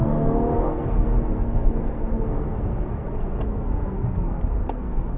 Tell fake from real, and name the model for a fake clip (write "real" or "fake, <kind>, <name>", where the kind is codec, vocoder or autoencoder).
fake, codec, SNAC